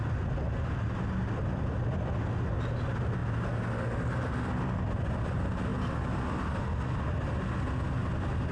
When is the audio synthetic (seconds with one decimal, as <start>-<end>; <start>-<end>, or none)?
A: none